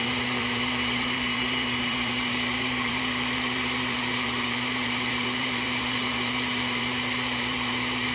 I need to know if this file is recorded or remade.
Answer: remade